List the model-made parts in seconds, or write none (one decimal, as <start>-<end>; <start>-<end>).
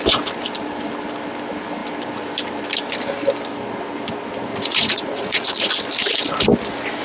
4.5-5.7